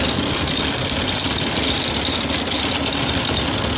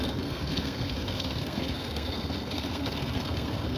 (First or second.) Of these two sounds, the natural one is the first